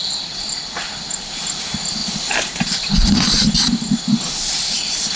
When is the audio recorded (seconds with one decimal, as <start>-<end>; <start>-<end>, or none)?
1.3-2.0